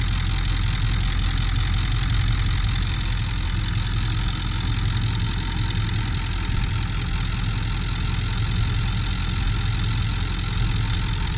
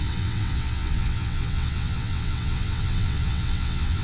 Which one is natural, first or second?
first